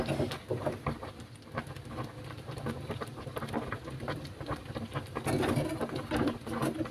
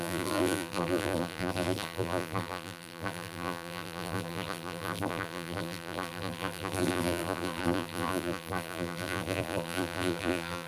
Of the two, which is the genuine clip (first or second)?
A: first